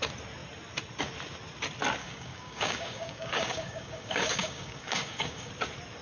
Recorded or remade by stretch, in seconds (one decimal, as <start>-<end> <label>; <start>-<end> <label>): 0.0-2.0 recorded; 2.0-5.5 remade; 5.5-6.0 recorded